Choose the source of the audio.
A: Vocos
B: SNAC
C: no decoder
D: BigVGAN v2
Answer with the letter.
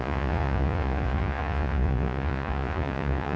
A